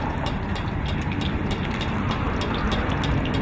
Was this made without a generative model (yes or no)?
yes